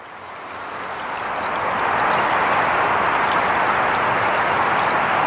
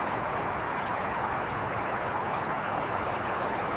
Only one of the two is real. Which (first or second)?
first